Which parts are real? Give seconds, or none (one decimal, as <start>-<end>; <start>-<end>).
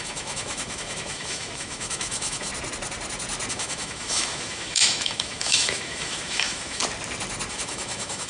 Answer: 2.5-3.5; 6.8-7.5